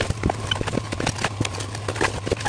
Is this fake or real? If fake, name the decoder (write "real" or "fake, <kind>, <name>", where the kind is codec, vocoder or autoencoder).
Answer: real